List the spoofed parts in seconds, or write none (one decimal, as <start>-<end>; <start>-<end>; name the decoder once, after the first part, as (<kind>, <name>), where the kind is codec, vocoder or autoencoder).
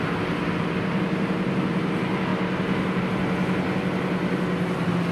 none